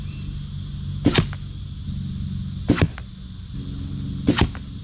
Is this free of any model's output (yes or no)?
yes